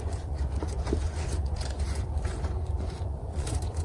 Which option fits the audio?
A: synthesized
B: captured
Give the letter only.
A